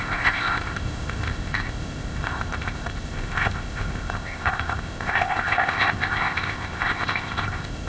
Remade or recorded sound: remade